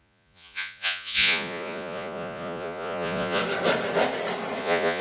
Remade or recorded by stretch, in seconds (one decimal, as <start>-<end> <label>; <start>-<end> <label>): 0.0-3.4 remade; 3.4-4.6 recorded; 4.6-5.0 remade